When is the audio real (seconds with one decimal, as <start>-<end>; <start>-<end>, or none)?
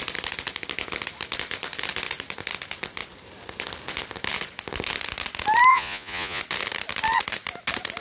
0.0-5.7; 6.4-8.0